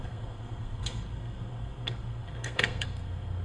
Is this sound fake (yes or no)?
yes